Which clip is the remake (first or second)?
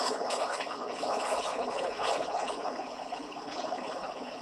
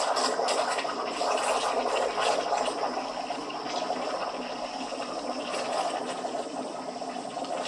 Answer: first